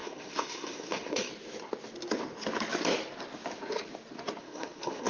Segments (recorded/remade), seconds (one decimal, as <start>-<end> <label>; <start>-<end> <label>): 0.0-1.3 remade; 1.3-4.4 recorded; 4.4-5.1 remade

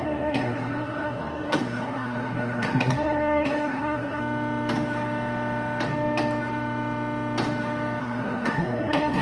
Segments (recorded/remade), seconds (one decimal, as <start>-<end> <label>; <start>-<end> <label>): 0.0-4.2 remade; 4.2-8.0 recorded; 8.0-9.2 remade

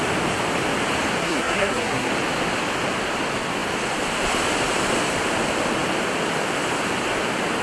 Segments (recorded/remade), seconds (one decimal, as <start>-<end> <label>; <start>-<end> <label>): 0.0-1.2 recorded; 1.2-2.1 remade; 2.1-7.6 recorded

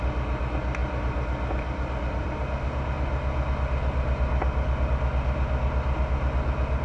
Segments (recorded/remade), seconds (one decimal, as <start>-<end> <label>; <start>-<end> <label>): 0.0-6.8 recorded

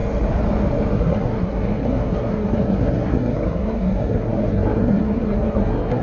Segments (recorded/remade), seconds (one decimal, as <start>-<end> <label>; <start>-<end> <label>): 0.0-0.9 recorded; 0.9-6.0 remade

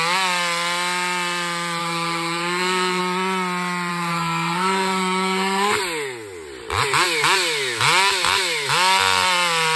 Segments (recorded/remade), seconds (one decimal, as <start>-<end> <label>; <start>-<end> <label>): 0.0-1.8 recorded; 1.8-3.0 remade; 3.0-3.9 recorded; 3.9-5.8 remade; 5.8-9.8 recorded